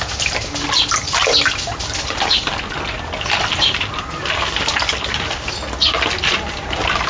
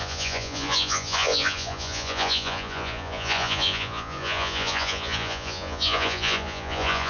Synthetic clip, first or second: second